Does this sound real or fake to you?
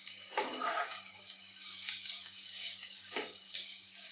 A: fake